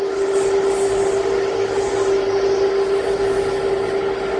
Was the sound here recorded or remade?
recorded